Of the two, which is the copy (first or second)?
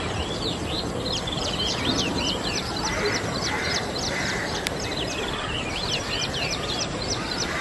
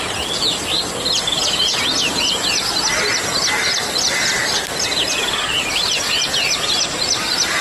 first